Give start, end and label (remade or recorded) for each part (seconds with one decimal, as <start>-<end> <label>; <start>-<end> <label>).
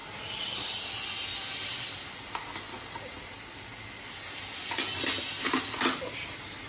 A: 0.0-6.7 recorded